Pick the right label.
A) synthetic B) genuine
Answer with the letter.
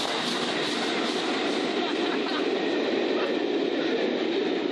B